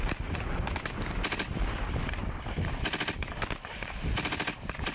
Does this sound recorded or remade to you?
remade